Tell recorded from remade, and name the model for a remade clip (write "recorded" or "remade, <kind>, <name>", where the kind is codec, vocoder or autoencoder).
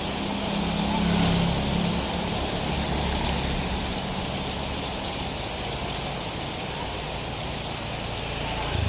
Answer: recorded